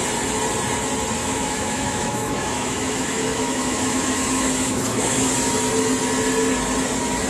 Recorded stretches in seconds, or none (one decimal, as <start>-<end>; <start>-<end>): 0.0-1.2; 5.3-7.3